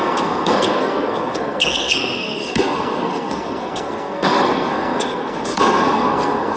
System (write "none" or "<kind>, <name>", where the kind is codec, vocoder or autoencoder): codec, SNAC